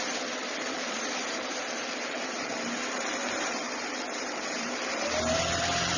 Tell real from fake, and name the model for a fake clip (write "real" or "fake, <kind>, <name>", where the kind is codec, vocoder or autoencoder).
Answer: fake, vocoder, BigVGAN v2